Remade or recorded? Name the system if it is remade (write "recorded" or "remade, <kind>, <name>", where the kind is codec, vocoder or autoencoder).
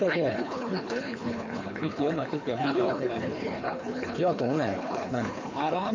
remade, codec, HILCodec